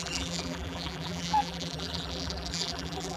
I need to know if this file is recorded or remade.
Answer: remade